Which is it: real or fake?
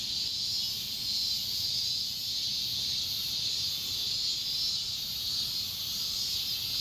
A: real